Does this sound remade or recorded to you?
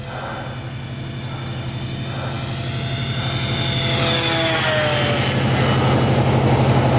recorded